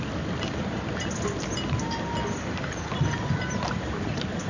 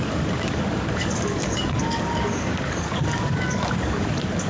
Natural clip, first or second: first